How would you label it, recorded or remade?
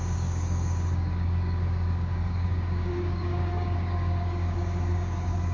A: remade